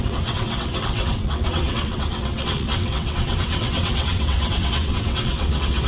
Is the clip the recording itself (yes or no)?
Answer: no